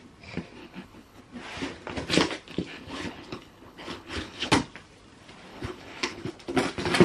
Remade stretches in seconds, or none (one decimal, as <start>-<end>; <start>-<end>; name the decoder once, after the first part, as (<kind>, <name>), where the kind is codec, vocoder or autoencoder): 0.6-1.2 (codec, HILCodec); 2.7-4.5; 5.5-6.3